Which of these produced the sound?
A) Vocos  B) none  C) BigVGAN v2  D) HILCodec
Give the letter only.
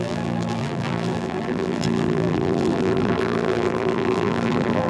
C